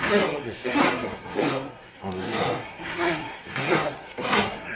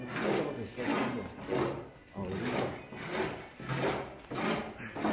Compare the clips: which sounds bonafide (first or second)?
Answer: second